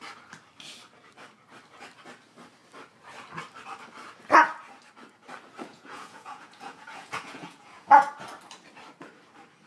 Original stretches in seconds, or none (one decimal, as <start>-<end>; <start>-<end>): 0.0-5.7; 8.1-9.7